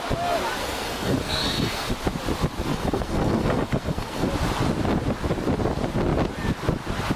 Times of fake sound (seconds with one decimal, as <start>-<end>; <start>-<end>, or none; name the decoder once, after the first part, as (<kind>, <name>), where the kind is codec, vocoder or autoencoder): 0.6-1.9 (codec, SNAC); 2.7-4.3